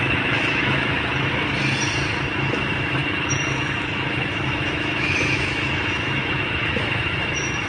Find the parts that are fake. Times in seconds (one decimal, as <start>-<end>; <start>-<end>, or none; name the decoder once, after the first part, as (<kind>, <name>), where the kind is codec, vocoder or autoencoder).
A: 0.0-1.5 (autoencoder, DAC-VAE); 2.3-7.7